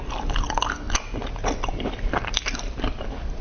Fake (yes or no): no